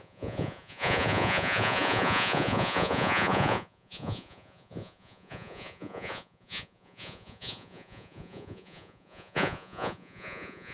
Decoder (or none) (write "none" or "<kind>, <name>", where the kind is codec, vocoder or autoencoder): vocoder, Vocos